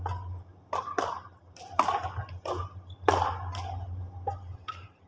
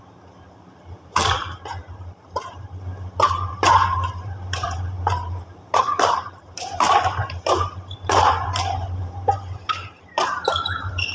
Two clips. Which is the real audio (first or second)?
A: first